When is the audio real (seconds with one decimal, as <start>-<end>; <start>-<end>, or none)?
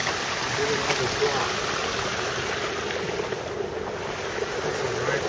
0.0-5.3